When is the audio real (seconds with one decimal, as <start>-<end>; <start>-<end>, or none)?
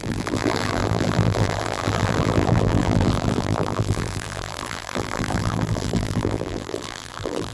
none